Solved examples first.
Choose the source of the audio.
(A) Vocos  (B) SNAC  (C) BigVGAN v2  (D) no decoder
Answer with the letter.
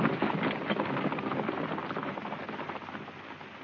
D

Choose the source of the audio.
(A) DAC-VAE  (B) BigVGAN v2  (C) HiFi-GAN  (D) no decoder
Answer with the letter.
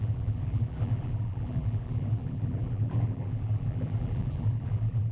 B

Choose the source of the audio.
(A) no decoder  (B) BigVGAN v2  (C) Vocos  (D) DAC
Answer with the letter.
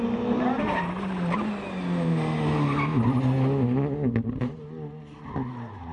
A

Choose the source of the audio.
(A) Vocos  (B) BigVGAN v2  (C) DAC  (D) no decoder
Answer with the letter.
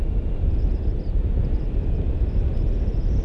D